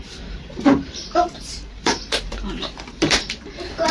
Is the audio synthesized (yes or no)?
yes